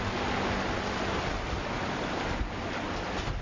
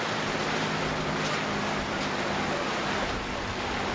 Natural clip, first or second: first